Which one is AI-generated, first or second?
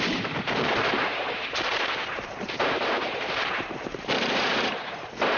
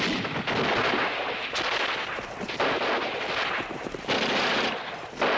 first